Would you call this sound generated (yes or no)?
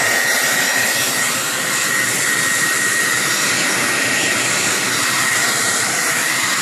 no